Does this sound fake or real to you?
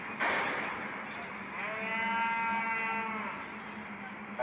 real